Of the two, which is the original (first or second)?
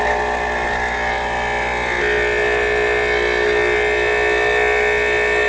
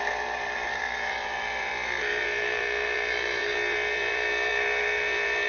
first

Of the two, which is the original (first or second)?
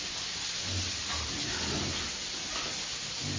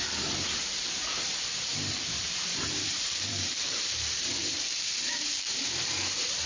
first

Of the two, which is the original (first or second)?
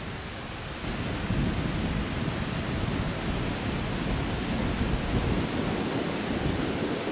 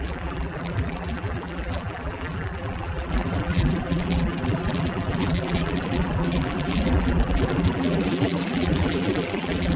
first